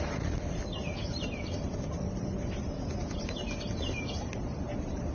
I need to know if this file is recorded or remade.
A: remade